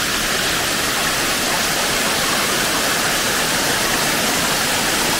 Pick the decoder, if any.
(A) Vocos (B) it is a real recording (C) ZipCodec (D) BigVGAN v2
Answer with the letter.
B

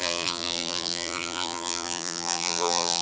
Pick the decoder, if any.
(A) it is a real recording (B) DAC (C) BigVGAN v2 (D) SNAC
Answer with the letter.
C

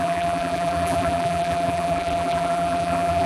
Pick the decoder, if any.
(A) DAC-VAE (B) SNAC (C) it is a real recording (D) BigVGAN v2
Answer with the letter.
D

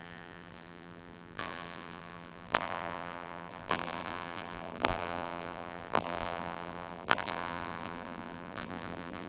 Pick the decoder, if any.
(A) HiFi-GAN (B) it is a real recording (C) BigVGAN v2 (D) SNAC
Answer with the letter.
C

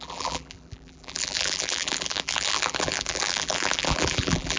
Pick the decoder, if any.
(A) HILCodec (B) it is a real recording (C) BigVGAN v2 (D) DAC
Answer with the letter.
C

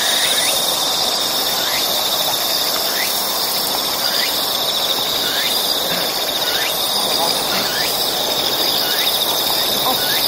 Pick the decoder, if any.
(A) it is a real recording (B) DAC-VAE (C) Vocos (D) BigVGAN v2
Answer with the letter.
D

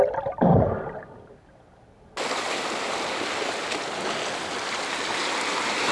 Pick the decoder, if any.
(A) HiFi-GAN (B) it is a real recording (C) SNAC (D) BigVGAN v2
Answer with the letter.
B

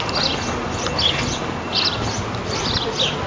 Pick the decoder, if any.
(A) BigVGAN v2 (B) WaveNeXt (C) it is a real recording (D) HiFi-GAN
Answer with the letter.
C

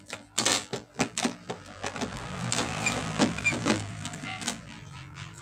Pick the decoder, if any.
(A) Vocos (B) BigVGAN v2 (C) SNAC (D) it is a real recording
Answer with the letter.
B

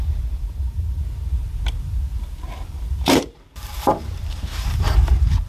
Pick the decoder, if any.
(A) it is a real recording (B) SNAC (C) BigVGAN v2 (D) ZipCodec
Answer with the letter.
C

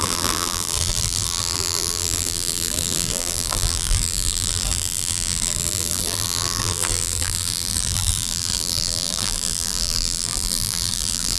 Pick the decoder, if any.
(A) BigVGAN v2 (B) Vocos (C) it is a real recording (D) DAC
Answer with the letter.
A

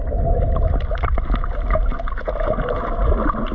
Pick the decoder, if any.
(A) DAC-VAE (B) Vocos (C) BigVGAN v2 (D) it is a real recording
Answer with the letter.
D